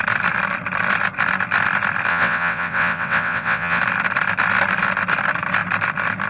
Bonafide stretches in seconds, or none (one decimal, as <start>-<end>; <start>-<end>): 0.0-2.1; 3.8-6.3